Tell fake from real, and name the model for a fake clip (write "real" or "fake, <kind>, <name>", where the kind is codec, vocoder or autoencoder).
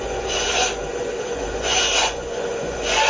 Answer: fake, vocoder, Vocos